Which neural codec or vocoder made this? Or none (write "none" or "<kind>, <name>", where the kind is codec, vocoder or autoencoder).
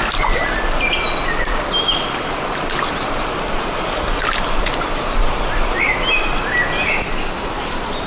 none